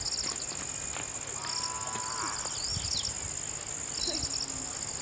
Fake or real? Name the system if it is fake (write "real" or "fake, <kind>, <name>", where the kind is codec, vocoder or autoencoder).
real